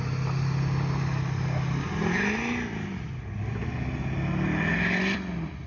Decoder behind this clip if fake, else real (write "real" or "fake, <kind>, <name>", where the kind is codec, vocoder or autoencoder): real